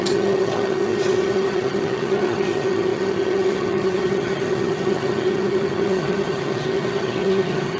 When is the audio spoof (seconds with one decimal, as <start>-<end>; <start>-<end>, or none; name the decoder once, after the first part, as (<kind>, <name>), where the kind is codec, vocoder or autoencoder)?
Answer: 0.0-7.8 (vocoder, HiFi-GAN)